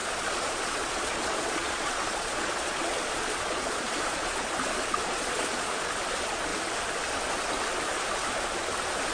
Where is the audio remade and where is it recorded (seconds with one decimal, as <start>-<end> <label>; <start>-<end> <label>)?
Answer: 0.0-4.4 remade; 4.4-5.0 recorded; 5.0-5.9 remade; 5.9-9.1 recorded